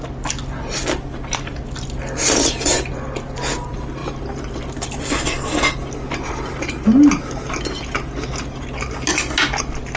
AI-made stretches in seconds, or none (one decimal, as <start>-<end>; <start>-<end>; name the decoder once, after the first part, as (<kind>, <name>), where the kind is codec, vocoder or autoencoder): none